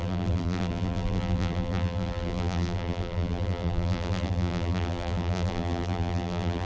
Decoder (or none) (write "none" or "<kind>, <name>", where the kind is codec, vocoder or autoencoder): vocoder, BigVGAN v2